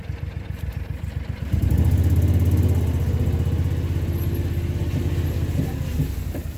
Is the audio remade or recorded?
recorded